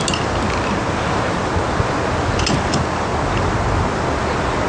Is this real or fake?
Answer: real